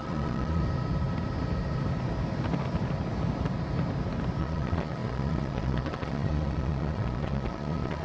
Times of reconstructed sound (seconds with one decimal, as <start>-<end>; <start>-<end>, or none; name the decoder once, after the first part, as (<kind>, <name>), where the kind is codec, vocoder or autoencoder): 0.0-0.6 (vocoder, Vocos); 4.4-8.0